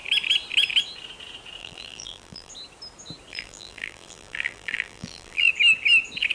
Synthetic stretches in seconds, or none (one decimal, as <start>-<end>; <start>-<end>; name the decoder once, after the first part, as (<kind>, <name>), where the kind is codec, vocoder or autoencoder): 1.6-2.5 (vocoder, BigVGAN v2); 3.3-5.5